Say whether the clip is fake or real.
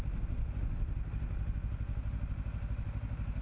real